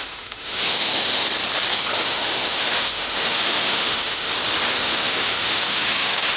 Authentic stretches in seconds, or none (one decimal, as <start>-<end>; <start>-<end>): 1.2-1.7; 4.3-4.8